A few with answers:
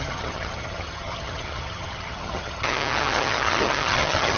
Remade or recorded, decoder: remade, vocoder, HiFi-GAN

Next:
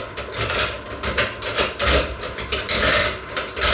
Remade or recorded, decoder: remade, vocoder, BigVGAN v2